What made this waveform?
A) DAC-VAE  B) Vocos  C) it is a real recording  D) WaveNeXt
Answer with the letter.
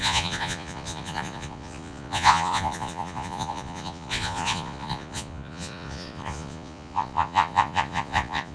B